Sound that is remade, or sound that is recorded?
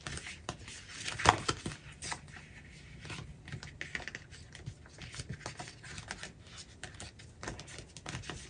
recorded